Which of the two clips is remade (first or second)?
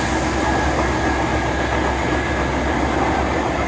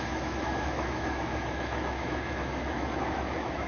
second